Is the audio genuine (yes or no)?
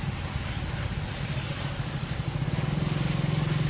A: yes